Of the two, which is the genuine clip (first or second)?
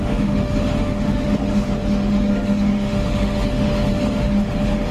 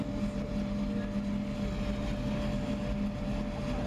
second